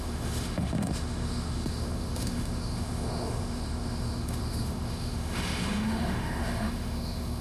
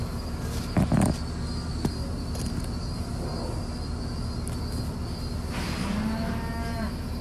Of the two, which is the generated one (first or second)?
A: first